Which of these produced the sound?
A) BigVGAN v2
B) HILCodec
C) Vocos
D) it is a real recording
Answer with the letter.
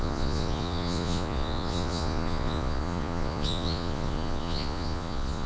C